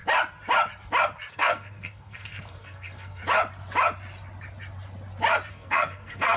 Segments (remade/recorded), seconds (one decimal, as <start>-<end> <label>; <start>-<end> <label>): 0.0-1.3 recorded; 1.3-3.2 remade; 3.2-5.5 recorded; 5.5-6.4 remade